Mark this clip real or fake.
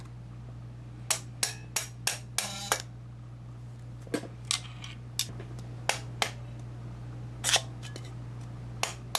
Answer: real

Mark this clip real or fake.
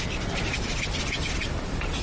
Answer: real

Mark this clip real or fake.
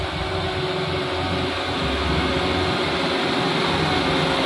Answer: real